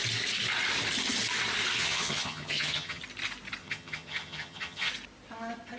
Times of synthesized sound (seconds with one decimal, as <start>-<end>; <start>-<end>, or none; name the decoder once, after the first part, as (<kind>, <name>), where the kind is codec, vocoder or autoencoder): 1.8-3.0 (vocoder, HiFi-GAN); 3.6-4.9